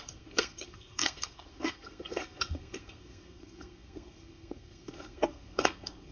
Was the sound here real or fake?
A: fake